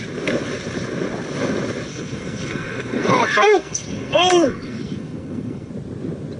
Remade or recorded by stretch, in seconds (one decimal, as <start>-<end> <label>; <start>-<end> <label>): 0.0-1.9 recorded; 1.9-5.7 remade; 5.7-6.4 recorded